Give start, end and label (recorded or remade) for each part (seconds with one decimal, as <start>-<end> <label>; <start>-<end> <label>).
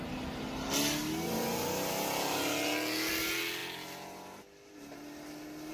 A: 0.0-5.7 recorded